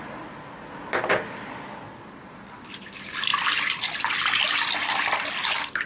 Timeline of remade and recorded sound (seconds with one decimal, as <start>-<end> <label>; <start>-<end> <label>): 0.0-5.9 recorded